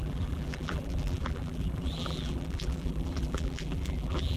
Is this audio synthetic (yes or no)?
yes